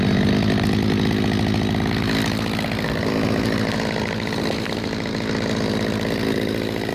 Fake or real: real